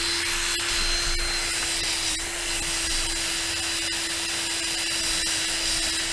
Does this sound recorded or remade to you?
recorded